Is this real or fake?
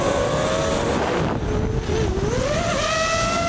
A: real